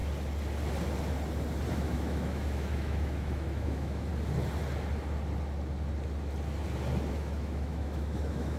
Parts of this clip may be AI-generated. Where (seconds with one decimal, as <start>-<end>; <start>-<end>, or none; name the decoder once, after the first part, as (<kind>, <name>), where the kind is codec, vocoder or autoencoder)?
1.7-4.1 (autoencoder, DAC-VAE); 7.1-8.6